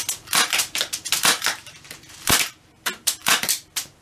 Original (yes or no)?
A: no